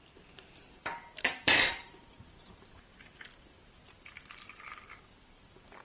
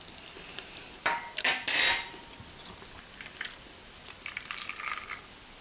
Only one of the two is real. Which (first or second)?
second